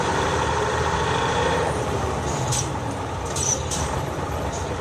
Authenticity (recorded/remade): remade